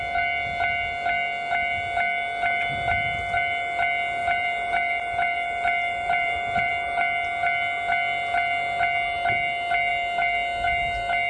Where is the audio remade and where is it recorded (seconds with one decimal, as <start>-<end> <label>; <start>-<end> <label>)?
0.0-4.2 recorded; 4.2-6.7 remade; 6.7-11.3 recorded